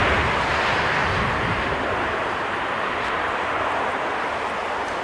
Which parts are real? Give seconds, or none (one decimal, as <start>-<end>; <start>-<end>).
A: 0.0-1.0; 4.0-5.0